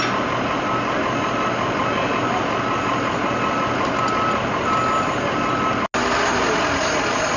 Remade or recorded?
recorded